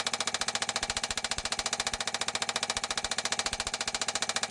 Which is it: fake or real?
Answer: real